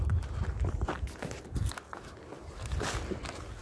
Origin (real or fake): real